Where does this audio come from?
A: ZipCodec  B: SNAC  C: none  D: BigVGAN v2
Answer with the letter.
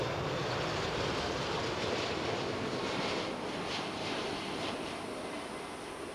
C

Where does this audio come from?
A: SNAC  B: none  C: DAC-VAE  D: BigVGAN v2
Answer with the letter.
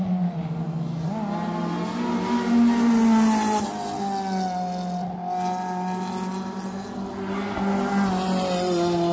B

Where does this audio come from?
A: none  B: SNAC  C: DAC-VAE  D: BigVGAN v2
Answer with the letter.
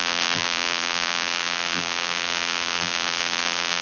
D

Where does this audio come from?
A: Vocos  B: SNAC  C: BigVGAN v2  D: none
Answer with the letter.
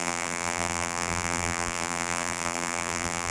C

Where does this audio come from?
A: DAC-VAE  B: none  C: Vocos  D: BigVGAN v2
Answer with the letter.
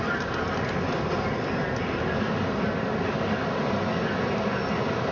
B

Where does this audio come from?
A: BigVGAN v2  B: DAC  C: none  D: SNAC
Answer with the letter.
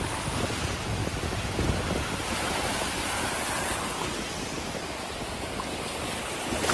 C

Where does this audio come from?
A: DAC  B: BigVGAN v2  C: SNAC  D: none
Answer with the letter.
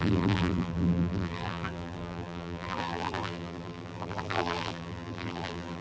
B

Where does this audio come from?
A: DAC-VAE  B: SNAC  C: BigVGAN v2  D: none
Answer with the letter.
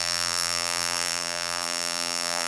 C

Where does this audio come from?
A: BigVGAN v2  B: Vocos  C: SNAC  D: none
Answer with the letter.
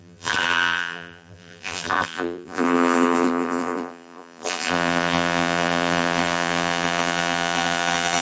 A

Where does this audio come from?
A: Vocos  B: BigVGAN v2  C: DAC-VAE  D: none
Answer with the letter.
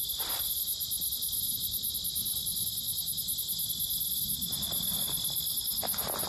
D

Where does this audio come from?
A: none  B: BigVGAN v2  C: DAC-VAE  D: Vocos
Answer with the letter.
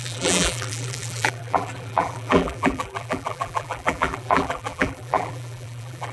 B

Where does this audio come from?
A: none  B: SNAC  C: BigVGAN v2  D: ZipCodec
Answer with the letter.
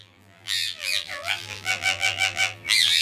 C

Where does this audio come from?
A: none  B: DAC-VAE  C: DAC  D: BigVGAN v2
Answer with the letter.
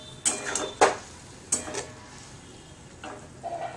A